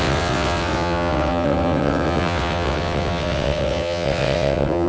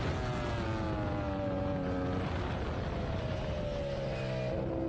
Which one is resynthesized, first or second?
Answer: first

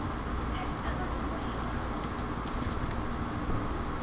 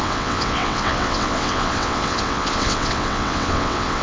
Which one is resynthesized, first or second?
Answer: second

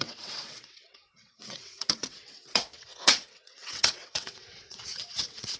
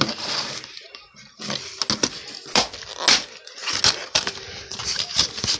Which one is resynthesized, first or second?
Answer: first